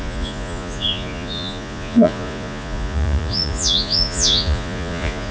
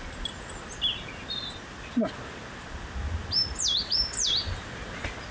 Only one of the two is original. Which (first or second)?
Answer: second